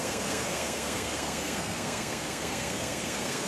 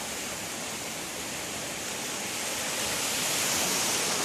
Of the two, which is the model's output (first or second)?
first